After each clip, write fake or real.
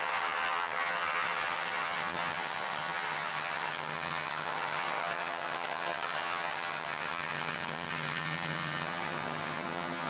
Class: fake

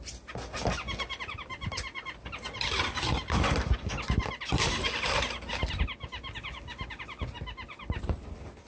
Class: real